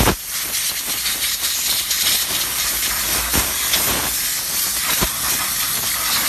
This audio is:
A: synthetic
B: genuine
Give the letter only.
A